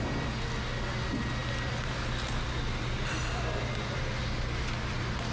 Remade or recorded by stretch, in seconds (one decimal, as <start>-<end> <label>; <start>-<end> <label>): 0.0-5.3 recorded